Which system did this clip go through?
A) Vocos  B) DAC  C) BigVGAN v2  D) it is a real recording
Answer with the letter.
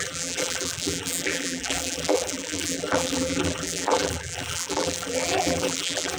C